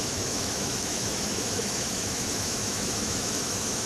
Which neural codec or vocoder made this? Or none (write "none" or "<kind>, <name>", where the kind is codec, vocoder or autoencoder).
autoencoder, DAC-VAE